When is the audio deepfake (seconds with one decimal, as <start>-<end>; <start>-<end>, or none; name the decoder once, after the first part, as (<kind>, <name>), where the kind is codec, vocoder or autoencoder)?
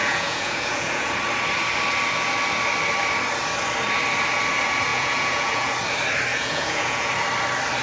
0.0-1.1 (vocoder, Vocos); 4.9-5.7; 6.3-7.1